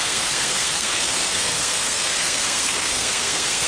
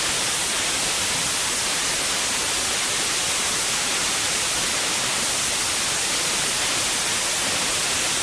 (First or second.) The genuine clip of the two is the second